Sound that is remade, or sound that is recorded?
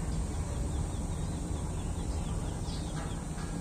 recorded